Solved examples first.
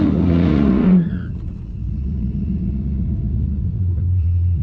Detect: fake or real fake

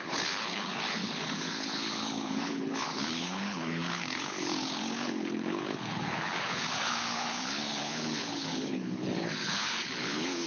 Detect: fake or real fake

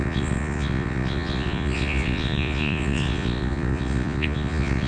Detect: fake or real fake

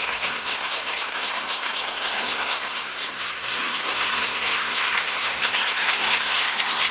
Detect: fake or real fake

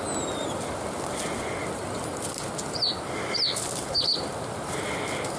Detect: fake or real real